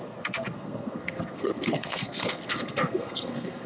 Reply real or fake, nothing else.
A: fake